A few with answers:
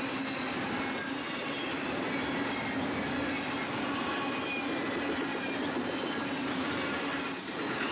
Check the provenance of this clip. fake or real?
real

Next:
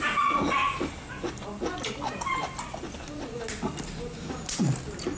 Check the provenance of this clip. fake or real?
real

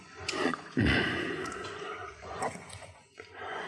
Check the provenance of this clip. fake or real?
fake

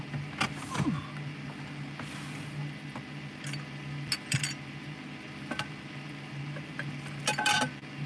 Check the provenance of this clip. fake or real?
real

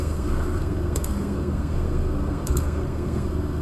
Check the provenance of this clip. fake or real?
fake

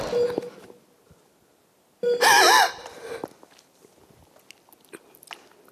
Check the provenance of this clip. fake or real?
real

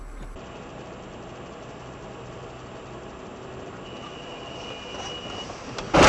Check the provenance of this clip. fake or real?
real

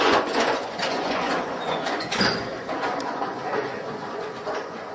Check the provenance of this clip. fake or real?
fake